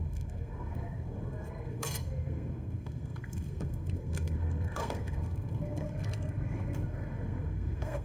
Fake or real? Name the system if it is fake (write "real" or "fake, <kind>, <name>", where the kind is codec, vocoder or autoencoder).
fake, codec, SNAC